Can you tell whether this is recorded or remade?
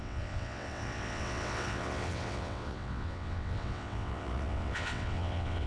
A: remade